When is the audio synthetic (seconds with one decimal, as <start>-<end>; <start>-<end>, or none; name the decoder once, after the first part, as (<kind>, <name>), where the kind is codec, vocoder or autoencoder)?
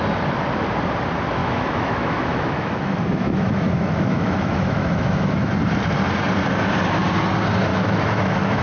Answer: 1.4-5.5 (autoencoder, DAC-VAE); 7.7-8.6